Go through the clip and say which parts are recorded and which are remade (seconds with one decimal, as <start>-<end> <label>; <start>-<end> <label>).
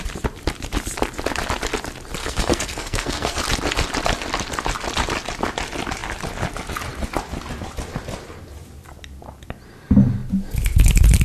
0.0-2.2 recorded; 2.2-3.4 remade; 3.4-11.2 recorded